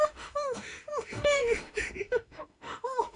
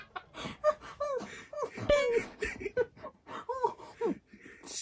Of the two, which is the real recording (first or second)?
second